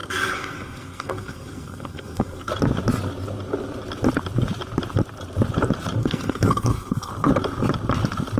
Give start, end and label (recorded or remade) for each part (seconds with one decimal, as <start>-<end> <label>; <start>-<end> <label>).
0.0-2.5 remade; 2.5-6.0 recorded; 6.0-7.1 remade; 7.1-8.4 recorded